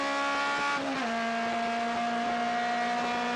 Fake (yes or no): no